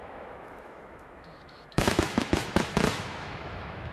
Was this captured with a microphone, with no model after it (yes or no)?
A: no